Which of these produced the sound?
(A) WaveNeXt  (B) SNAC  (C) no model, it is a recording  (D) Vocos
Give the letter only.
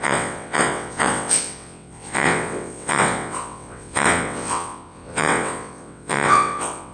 A